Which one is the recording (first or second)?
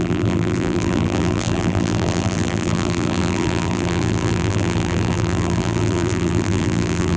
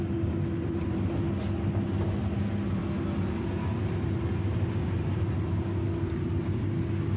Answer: second